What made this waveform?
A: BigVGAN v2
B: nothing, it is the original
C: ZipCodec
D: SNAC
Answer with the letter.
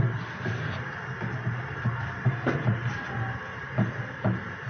B